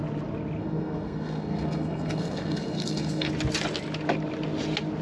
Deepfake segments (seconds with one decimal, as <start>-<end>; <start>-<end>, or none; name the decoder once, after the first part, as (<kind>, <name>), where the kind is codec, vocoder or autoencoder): 0.6-3.3 (codec, SNAC)